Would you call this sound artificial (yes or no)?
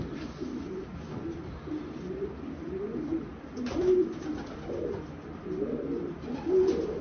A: yes